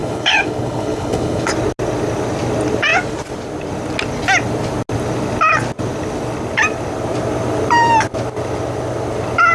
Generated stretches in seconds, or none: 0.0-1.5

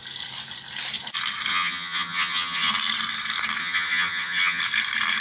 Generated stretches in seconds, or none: 1.5-2.7; 3.6-4.6

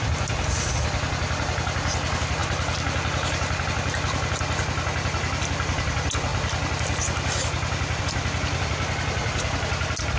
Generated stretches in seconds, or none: none

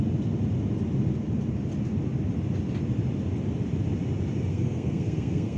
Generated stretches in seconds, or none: 4.5-5.6

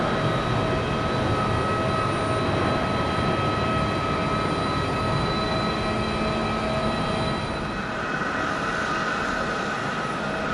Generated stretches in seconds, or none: none